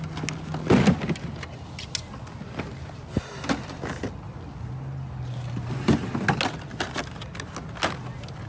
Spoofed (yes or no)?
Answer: no